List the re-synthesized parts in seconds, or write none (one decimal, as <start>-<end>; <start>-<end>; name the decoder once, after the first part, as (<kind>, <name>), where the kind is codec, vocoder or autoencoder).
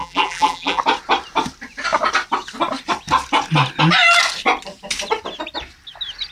0.0-0.8 (vocoder, BigVGAN v2)